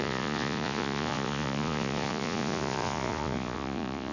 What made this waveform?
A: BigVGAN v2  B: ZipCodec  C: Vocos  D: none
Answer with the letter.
C